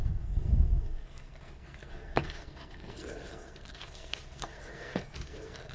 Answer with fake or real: fake